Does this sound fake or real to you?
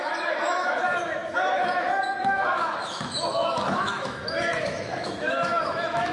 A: fake